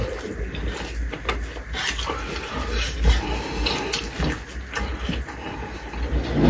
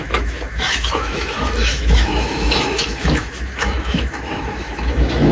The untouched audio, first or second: first